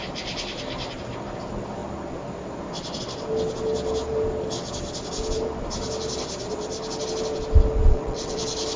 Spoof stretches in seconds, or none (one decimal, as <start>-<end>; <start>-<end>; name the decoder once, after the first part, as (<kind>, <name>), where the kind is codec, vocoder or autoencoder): 7.8-8.4 (vocoder, WaveNeXt)